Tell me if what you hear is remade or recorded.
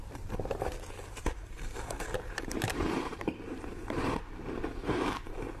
remade